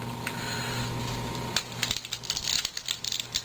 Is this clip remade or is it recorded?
recorded